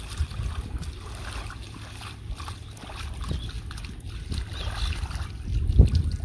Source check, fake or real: real